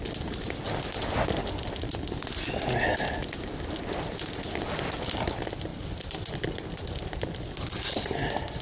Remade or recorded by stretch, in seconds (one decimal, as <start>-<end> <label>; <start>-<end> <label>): 0.0-8.6 recorded

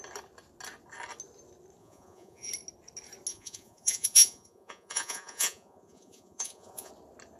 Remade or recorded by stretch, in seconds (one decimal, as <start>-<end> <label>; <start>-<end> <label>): 0.0-1.8 recorded; 1.8-2.5 remade; 2.5-3.3 recorded; 3.3-6.9 remade; 6.9-7.4 recorded